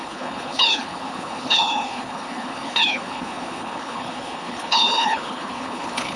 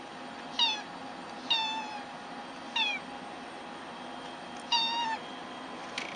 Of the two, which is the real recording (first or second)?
second